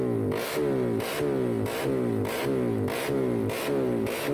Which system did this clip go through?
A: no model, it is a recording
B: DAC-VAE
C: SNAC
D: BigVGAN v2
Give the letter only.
A